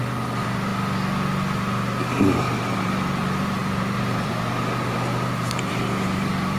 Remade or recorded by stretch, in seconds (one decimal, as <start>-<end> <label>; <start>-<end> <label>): 0.0-0.7 remade; 0.7-2.4 recorded; 2.4-6.6 remade